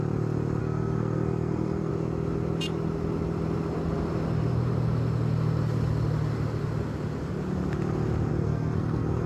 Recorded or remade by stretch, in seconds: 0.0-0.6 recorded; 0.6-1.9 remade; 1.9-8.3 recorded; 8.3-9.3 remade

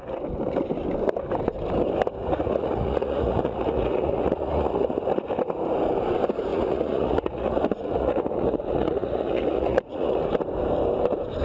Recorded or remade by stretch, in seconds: 0.0-2.2 recorded; 2.2-5.0 remade; 5.0-6.5 recorded; 6.5-10.2 remade; 10.2-11.4 recorded

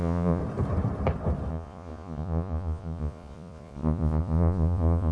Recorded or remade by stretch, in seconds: 0.0-0.4 remade; 0.4-1.5 recorded; 1.5-5.1 remade

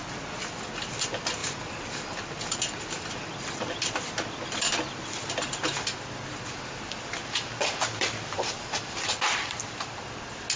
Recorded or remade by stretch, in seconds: 0.0-1.4 recorded; 1.4-2.4 remade; 2.4-7.2 recorded; 7.2-10.0 remade; 10.0-10.6 recorded